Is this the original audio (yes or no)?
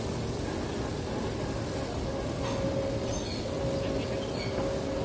yes